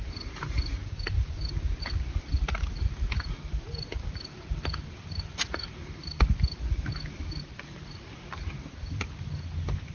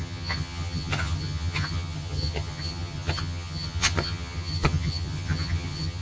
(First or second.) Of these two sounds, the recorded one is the first